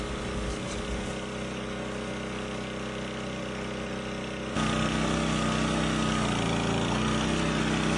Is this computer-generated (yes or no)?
no